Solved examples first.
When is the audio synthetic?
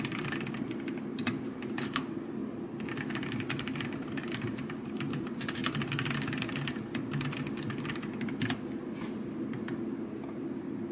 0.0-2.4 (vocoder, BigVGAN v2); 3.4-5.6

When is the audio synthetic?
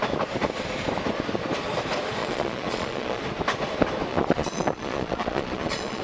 2.2-3.2 (vocoder, Vocos); 4.1-6.0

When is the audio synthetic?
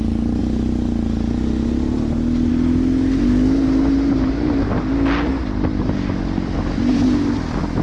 none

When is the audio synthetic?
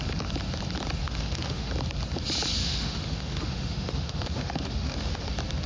1.0-1.7 (autoencoder, DAC-VAE); 2.6-5.3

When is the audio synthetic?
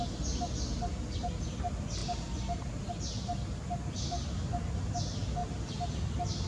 2.0-2.9 (vocoder, BigVGAN v2); 5.4-5.9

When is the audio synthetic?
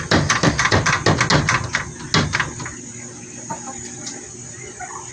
none